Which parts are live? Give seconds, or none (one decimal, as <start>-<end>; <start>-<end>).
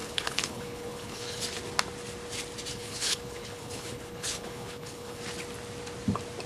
1.4-2.7; 5.2-6.5